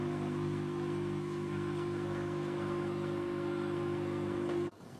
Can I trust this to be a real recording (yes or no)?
no